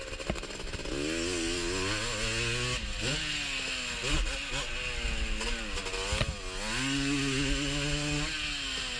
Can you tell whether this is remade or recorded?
recorded